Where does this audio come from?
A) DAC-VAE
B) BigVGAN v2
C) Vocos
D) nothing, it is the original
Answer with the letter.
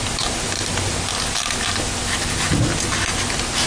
D